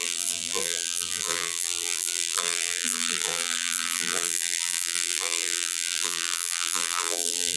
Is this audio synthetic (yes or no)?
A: yes